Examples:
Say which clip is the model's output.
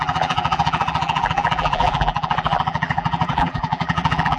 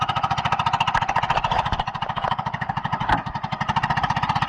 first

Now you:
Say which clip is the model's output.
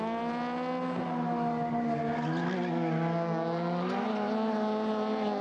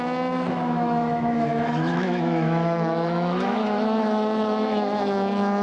second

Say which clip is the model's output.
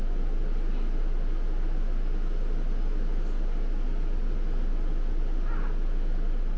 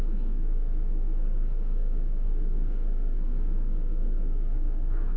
second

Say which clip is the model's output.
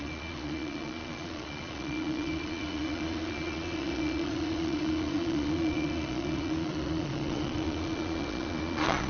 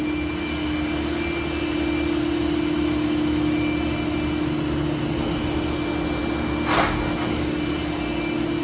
first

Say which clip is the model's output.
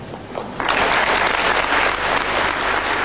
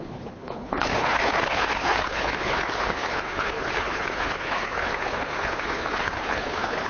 second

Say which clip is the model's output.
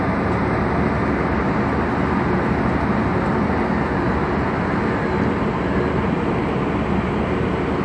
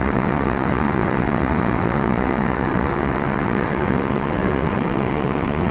second